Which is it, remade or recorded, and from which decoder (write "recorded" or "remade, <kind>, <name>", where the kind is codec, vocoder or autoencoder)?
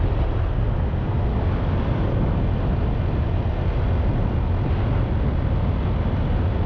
recorded